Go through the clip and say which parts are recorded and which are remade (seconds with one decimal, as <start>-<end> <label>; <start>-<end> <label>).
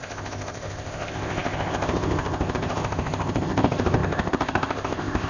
0.0-5.3 remade